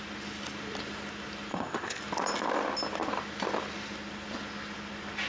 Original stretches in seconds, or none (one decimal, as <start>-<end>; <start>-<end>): 0.0-1.5; 2.0-5.3